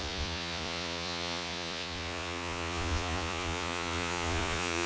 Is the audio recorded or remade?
remade